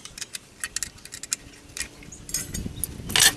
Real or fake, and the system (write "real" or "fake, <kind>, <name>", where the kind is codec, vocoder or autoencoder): real